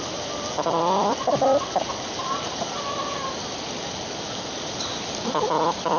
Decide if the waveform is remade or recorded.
remade